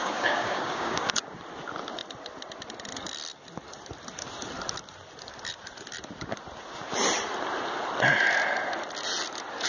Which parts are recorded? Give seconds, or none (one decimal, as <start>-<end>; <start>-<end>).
1.1-9.7